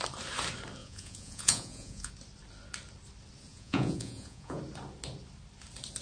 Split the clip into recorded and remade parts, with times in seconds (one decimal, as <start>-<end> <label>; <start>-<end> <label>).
0.0-0.8 recorded; 0.8-2.1 remade; 2.1-3.5 recorded; 3.5-4.6 remade; 4.6-6.0 recorded